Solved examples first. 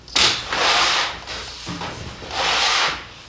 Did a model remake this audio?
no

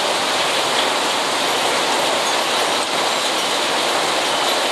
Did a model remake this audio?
no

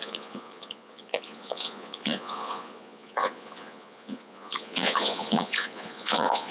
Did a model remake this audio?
yes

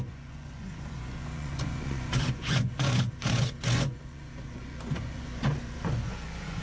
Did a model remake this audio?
yes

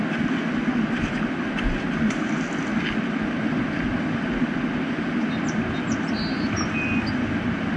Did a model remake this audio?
no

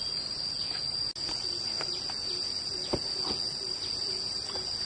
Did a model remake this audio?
no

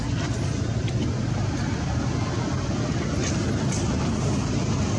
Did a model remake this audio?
no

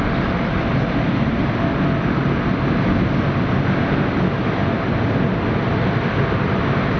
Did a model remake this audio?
no